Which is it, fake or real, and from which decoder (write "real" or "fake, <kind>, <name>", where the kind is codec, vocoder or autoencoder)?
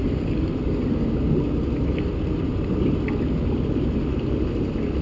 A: real